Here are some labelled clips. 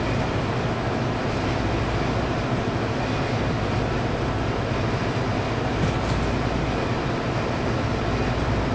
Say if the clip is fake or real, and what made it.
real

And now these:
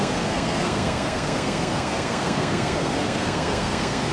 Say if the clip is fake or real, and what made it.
fake, codec, SNAC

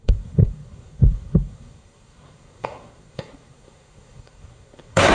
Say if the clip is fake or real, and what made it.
fake, codec, SNAC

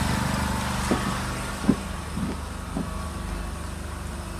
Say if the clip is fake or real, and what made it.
real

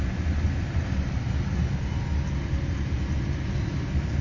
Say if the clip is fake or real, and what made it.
real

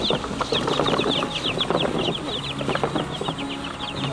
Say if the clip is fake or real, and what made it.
real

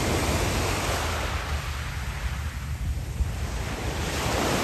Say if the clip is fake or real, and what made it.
real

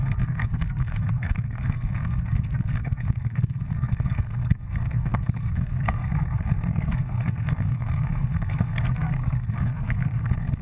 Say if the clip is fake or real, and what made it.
fake, codec, SNAC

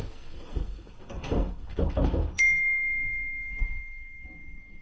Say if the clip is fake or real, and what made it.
fake, codec, SNAC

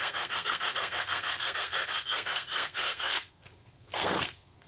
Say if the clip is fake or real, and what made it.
fake, codec, SNAC